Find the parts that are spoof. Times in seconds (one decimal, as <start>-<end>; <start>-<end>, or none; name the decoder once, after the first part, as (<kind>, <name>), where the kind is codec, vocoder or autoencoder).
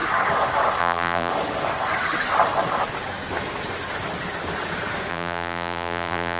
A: 0.8-1.3 (vocoder, BigVGAN v2); 5.1-6.4